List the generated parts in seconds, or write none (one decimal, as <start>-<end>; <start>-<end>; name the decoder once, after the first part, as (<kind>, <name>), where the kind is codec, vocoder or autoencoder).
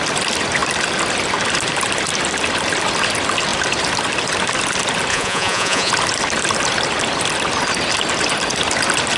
5.1-5.9 (vocoder, Vocos)